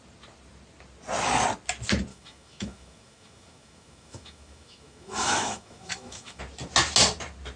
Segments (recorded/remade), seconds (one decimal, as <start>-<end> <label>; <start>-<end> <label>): 0.0-2.1 recorded; 2.1-6.4 remade; 6.4-7.6 recorded